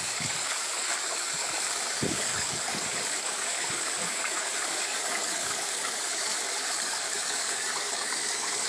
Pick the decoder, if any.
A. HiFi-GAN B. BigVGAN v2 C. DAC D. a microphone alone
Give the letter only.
C